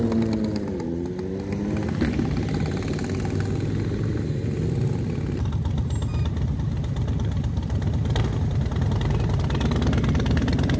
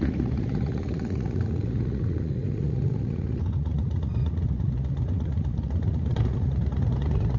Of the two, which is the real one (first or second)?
first